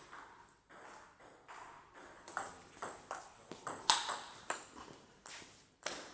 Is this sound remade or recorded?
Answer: recorded